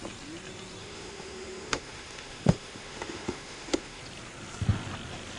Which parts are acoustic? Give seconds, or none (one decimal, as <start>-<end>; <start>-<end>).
0.0-0.8; 4.0-5.4